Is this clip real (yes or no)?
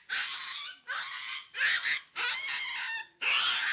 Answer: no